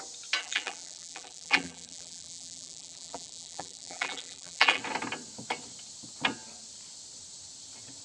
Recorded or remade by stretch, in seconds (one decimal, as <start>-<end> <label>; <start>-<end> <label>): 0.0-0.4 recorded; 0.4-4.8 remade; 4.8-8.0 recorded